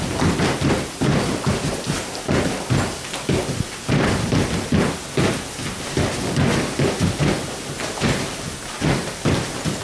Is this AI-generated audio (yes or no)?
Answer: no